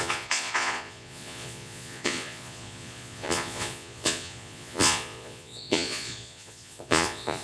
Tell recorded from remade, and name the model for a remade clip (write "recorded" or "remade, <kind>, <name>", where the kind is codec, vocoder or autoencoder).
remade, vocoder, Vocos